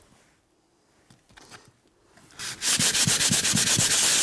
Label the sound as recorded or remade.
recorded